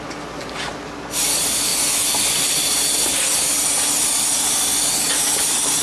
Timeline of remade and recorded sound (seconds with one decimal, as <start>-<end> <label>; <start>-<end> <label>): 0.0-5.8 recorded